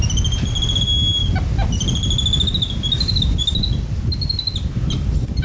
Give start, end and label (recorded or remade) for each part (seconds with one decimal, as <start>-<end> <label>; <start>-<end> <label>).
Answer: 0.0-5.4 recorded